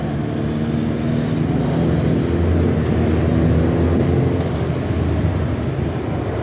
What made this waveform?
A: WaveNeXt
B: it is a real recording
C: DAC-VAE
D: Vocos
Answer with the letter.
B